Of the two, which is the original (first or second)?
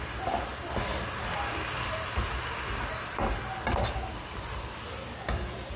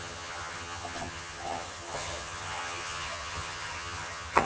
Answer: first